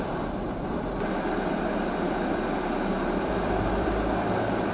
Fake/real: fake